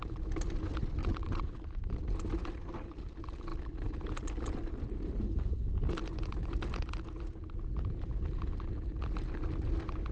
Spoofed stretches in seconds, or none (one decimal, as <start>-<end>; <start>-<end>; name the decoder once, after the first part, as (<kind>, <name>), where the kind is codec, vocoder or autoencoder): 1.0-1.6 (vocoder, WaveNeXt)